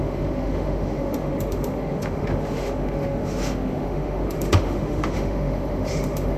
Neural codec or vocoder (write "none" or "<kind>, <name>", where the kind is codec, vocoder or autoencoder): autoencoder, DAC-VAE